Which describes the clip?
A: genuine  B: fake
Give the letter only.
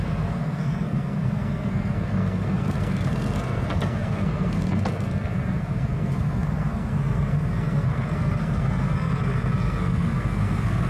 B